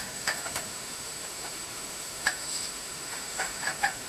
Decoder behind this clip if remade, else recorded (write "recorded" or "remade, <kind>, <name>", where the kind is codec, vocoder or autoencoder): remade, autoencoder, DAC-VAE